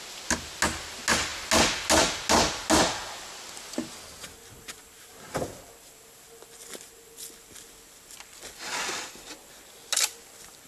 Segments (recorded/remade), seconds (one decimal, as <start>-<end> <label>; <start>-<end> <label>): 0.0-10.7 recorded